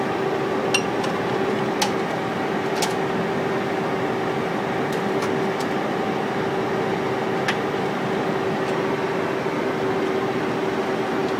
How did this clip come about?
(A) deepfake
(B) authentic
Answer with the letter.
B